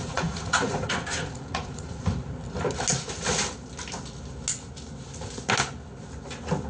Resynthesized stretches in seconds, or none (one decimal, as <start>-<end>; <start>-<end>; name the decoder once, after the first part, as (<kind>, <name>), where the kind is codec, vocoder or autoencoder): 0.0-2.0 (vocoder, Vocos)